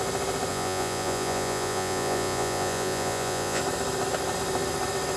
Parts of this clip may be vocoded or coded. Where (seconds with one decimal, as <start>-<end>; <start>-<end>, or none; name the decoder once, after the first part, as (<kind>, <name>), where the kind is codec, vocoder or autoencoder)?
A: 0.5-3.6 (vocoder, Vocos)

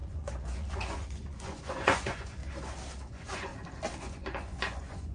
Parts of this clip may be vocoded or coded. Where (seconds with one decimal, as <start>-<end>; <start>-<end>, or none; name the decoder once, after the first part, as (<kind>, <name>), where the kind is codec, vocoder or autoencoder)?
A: 0.0-2.4 (vocoder, Vocos); 3.1-3.5; 4.0-5.1

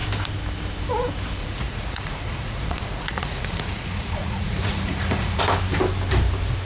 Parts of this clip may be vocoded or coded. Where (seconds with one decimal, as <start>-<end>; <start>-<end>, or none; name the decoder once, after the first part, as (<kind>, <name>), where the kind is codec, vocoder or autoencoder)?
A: 1.4-5.4 (vocoder, Vocos)